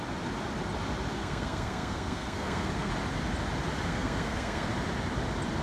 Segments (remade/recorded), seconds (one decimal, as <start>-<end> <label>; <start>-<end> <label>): 0.0-1.2 recorded; 1.2-2.9 remade; 2.9-3.8 recorded; 3.8-4.7 remade; 4.7-5.6 recorded